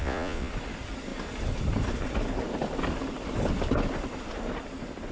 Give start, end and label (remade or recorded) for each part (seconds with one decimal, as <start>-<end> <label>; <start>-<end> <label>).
0.0-0.5 remade; 0.5-5.1 recorded